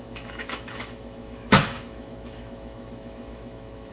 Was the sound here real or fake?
fake